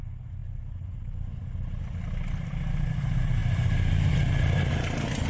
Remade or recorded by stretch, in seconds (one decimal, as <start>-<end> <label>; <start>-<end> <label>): 0.0-5.3 recorded